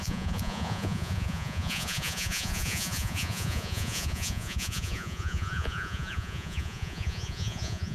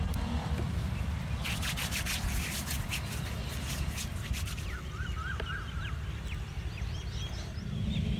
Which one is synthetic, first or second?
first